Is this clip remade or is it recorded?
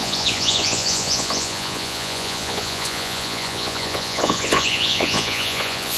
remade